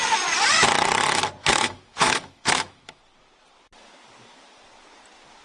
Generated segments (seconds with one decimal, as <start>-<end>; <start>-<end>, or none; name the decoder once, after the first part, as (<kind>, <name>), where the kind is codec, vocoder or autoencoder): 1.4-3.0 (autoencoder, DAC-VAE)